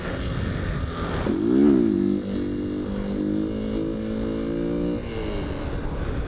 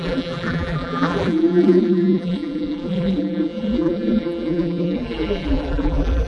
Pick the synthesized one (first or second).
second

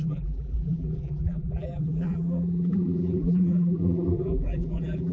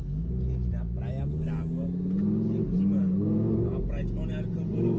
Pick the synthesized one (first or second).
first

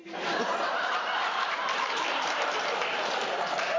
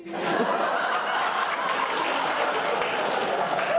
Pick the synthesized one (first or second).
first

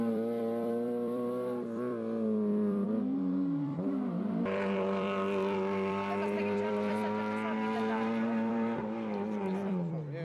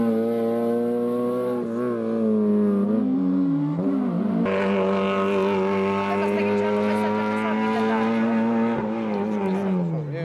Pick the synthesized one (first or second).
first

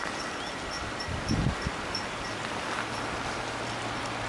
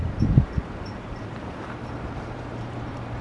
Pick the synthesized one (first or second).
second